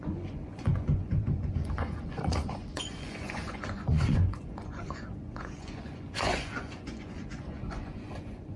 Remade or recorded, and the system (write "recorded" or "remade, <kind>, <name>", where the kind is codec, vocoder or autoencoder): remade, vocoder, Vocos